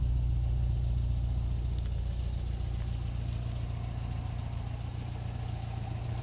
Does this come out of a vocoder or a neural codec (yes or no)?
no